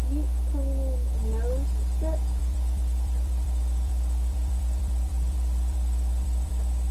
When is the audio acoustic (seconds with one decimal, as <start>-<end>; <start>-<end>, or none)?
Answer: 0.0-2.4; 6.5-6.9